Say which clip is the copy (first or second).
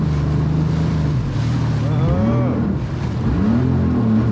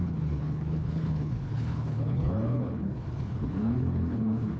second